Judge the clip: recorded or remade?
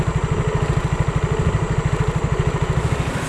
recorded